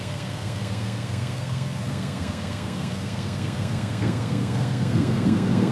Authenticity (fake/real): fake